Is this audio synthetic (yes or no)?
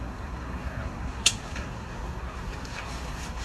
yes